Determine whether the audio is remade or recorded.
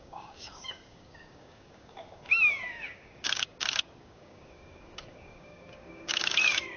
remade